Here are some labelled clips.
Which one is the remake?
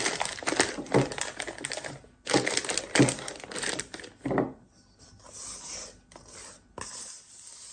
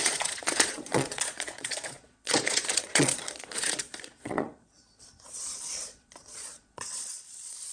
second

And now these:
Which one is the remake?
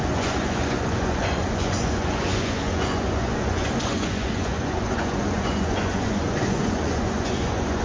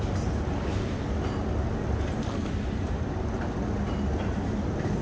first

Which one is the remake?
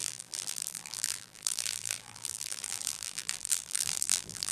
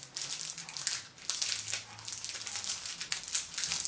first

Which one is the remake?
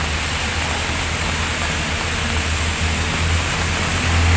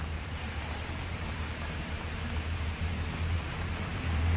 second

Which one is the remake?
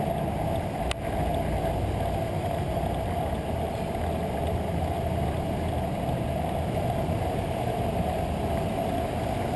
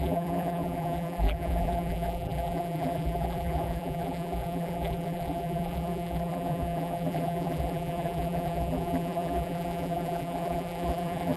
second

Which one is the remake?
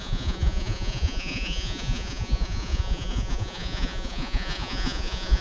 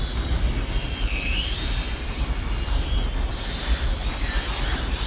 first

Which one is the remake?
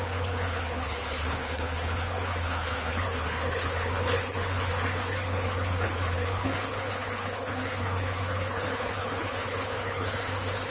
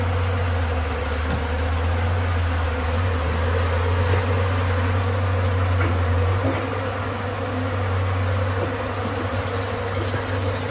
first